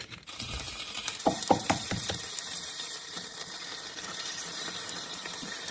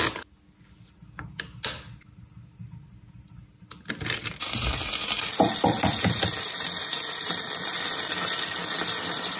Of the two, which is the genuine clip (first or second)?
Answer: second